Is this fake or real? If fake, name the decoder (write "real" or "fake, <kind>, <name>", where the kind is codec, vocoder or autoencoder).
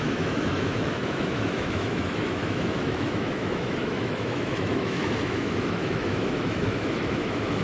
fake, autoencoder, DAC-VAE